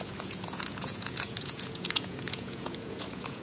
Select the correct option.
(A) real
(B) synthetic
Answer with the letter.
B